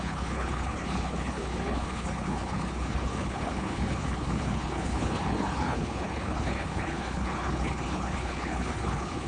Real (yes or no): no